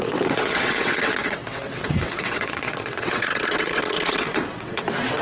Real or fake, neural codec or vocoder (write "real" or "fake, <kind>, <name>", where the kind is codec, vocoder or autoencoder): fake, vocoder, WaveNeXt